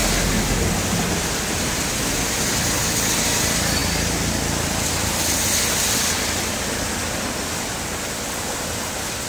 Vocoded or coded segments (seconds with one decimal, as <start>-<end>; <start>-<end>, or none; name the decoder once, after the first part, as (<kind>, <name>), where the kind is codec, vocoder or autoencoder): none